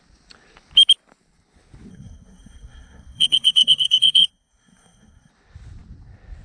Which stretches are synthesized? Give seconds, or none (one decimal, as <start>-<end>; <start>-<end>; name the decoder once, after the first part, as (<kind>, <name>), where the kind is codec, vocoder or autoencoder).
1.9-5.3 (codec, SNAC)